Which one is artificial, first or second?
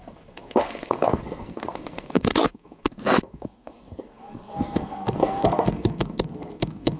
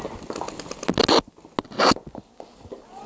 first